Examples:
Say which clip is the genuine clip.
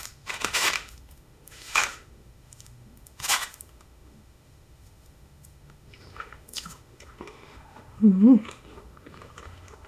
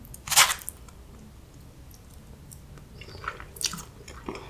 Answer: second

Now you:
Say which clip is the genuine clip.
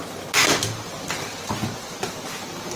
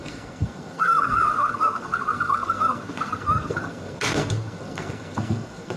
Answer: first